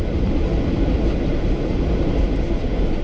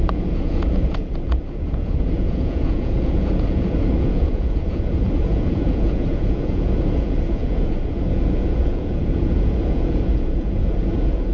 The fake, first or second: second